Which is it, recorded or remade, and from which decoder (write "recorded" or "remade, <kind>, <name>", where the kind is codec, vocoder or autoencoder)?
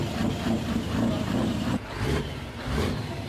remade, vocoder, BigVGAN v2